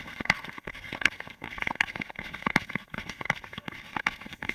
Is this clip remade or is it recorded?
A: remade